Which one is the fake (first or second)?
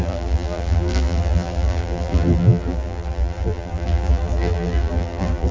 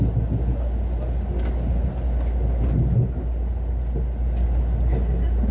first